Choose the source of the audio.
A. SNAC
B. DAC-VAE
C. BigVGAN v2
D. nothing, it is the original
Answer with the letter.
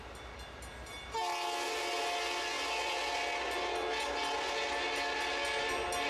D